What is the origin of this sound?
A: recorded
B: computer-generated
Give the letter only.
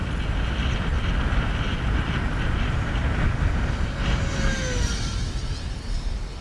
A